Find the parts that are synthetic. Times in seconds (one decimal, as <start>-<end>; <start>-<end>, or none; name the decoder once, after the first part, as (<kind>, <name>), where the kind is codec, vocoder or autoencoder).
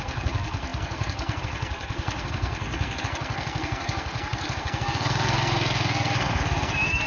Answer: 0.0-7.1 (codec, SNAC)